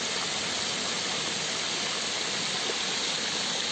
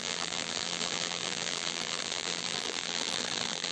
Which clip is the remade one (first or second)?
second